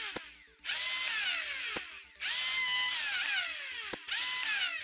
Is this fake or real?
real